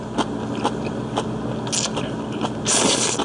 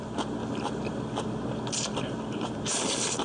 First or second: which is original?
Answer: first